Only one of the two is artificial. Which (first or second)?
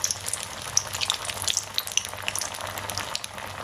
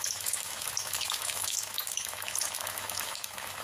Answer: second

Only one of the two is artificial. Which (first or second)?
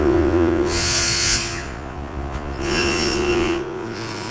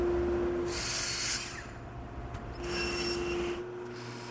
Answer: first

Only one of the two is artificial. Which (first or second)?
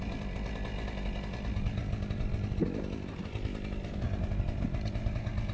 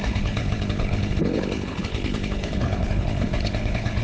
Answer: second